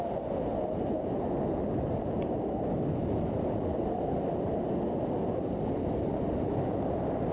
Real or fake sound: real